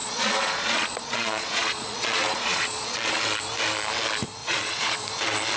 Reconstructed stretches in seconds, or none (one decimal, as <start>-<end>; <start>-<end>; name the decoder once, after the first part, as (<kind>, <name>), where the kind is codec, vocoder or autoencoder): 0.0-3.2 (vocoder, Vocos); 4.4-5.0